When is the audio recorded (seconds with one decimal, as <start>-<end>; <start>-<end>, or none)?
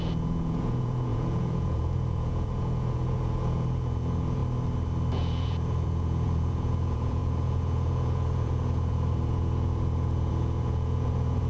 4.4-5.1